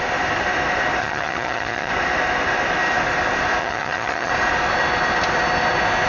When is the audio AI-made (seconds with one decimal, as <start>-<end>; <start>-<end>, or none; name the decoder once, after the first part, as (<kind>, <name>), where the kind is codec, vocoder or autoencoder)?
1.0-1.9 (vocoder, HiFi-GAN); 3.6-4.3

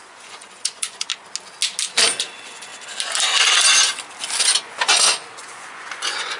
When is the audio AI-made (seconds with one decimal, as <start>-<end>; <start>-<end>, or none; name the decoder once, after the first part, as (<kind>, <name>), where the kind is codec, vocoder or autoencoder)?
0.0-1.1 (vocoder, Vocos); 2.2-2.7; 4.4-6.4

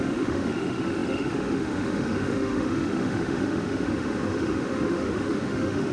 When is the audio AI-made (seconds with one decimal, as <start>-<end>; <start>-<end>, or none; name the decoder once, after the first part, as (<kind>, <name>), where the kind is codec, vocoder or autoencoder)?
0.0-5.9 (autoencoder, DAC-VAE)

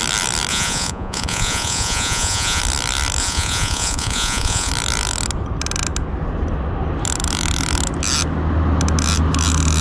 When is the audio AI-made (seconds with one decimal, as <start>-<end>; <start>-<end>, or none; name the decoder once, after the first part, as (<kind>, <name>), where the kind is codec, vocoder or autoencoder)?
0.5-2.6 (vocoder, Vocos); 3.2-4.7